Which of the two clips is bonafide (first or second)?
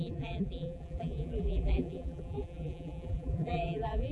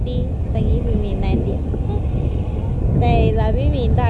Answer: second